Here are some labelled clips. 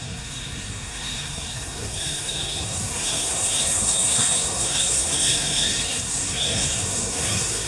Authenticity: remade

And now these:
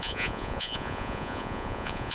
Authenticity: remade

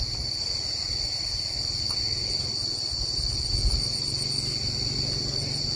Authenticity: recorded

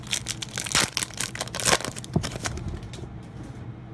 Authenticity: recorded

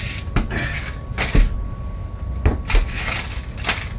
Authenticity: recorded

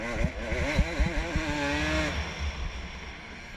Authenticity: recorded